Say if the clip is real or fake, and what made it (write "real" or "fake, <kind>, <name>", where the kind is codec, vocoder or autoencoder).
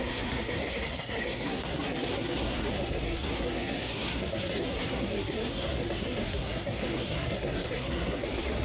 fake, codec, SNAC